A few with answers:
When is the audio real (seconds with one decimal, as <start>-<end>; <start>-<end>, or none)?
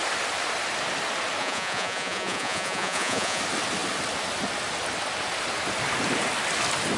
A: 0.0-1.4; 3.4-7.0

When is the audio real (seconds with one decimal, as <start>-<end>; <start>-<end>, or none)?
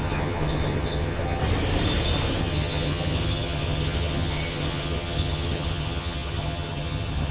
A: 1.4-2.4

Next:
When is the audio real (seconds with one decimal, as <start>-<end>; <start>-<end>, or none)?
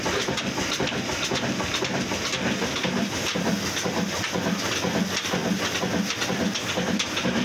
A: 0.0-7.4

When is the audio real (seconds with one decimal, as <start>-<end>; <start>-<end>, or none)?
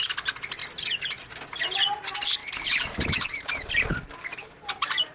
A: 0.0-5.1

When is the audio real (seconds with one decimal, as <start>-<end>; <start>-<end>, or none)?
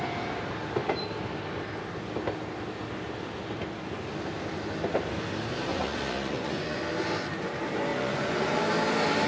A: 0.0-5.7; 6.8-7.9; 8.6-9.3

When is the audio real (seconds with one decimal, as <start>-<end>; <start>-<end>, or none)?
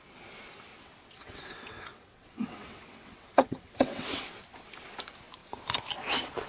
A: 0.0-0.7; 4.3-6.5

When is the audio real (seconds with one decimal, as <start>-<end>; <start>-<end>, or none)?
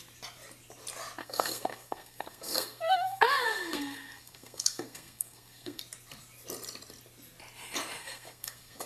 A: 0.0-1.2; 5.8-8.0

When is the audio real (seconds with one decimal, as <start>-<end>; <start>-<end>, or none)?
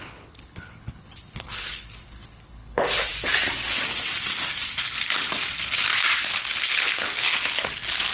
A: 3.1-6.7; 7.3-8.1